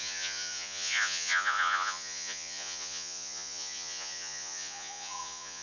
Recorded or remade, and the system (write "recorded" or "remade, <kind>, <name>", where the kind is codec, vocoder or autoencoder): remade, vocoder, Vocos